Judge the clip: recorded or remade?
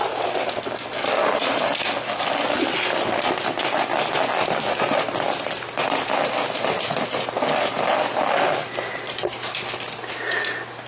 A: recorded